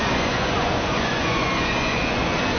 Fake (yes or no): yes